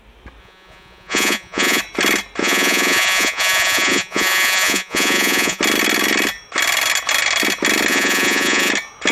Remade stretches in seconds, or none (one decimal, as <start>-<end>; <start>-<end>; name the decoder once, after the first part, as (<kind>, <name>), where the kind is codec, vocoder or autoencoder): 0.4-1.8 (vocoder, Vocos); 2.4-5.6; 7.9-8.7